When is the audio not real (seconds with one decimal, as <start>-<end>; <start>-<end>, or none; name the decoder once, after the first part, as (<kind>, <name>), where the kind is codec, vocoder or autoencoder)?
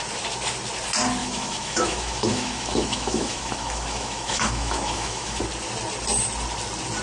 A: 1.2-5.4 (autoencoder, DAC-VAE)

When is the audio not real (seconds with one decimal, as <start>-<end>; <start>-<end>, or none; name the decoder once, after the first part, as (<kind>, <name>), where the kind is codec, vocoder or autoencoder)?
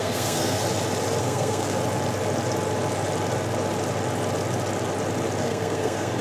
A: 0.0-0.6 (codec, SNAC); 1.2-1.8; 5.4-6.2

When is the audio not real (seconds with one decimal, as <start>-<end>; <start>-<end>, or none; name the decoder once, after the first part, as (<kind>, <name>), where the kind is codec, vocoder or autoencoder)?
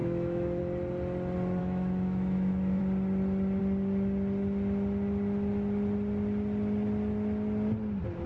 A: 0.0-0.6 (autoencoder, DAC-VAE); 1.6-2.8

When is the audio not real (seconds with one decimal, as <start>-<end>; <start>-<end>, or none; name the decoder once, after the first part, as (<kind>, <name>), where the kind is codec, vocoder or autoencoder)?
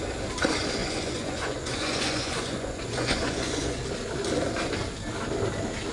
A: 0.8-3.8 (vocoder, Vocos)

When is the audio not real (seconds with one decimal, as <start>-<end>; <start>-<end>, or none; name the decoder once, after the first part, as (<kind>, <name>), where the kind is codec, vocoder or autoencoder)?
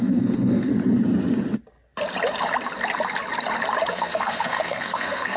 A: 0.0-0.7 (codec, SNAC); 3.9-5.4